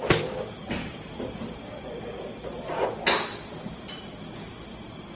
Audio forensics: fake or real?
real